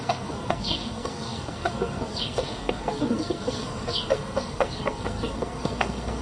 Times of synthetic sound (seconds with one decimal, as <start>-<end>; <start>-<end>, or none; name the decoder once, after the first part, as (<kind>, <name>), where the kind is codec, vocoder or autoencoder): 0.0-6.2 (codec, SNAC)